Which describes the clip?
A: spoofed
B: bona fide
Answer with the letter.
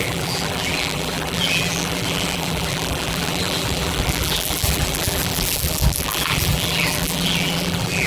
A